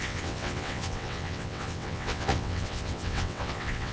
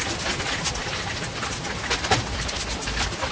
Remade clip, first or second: first